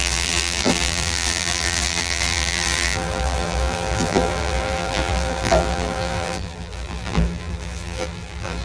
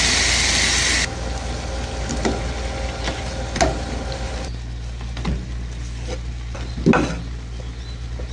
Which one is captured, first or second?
second